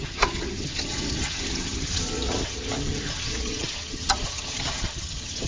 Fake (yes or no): yes